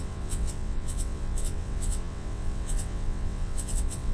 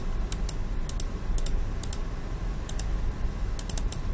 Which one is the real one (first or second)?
second